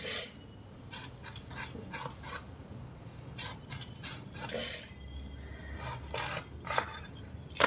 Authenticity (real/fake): real